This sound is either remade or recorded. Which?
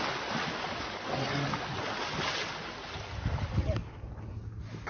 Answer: recorded